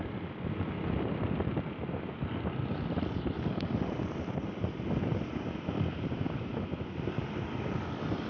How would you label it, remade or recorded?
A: remade